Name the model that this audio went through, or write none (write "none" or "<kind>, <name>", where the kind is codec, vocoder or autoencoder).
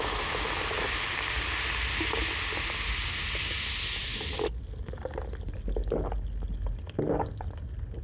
none